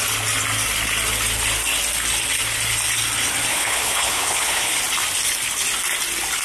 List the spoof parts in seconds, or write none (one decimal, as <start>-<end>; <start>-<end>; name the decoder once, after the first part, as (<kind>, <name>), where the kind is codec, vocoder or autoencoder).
3.5-4.8 (codec, HILCodec)